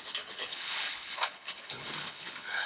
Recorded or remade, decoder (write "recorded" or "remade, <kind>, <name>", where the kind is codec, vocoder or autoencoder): remade, codec, HILCodec